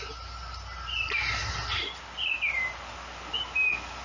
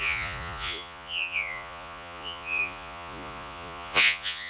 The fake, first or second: second